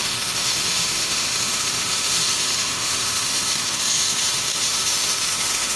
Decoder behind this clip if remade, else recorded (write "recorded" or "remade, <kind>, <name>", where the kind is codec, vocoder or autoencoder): remade, autoencoder, DAC-VAE